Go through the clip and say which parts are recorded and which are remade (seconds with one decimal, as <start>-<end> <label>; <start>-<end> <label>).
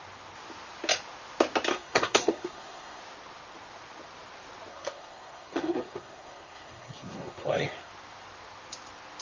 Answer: 0.0-1.7 recorded; 1.7-3.0 remade; 3.0-4.7 recorded; 4.7-7.9 remade; 7.9-9.2 recorded